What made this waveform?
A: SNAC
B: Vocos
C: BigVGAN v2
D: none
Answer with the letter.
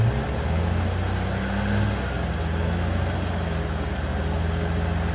D